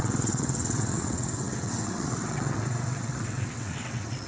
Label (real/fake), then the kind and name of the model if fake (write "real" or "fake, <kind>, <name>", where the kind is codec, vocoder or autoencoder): fake, vocoder, WaveNeXt